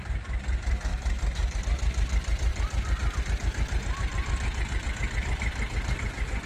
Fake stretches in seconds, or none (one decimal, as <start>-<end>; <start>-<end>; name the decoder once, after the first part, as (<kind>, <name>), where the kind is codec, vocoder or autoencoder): 0.9-1.6 (vocoder, BigVGAN v2); 2.5-3.2